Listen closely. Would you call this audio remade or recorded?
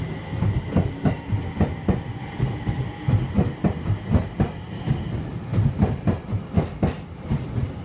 recorded